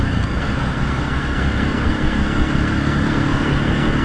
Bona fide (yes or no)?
no